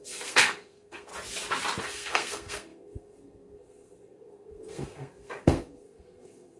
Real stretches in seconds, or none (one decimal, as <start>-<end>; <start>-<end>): 1.1-1.8